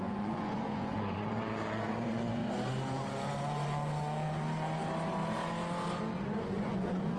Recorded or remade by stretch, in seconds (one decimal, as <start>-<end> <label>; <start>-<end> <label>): 0.0-2.4 remade; 2.4-6.4 recorded; 6.4-7.2 remade